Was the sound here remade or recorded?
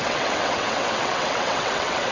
remade